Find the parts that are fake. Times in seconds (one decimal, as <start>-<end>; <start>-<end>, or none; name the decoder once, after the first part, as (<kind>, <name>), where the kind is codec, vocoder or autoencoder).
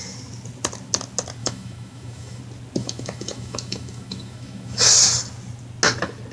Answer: 1.4-2.4 (autoencoder, DAC-VAE); 2.8-4.9